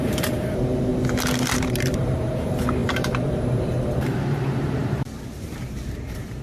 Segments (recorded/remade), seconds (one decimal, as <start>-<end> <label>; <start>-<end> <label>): 0.0-0.9 remade; 0.9-1.6 recorded; 1.6-6.4 remade